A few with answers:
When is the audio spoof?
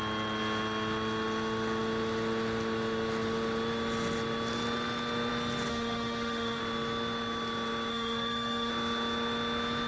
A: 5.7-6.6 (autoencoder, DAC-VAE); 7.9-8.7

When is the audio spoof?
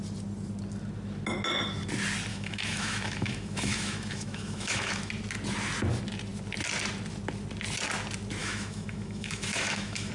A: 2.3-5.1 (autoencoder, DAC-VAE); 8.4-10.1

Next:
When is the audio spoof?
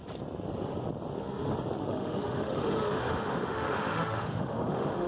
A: 1.8-5.1 (autoencoder, DAC-VAE)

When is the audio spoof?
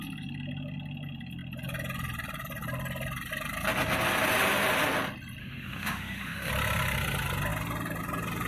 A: 5.4-6.5 (autoencoder, DAC-VAE)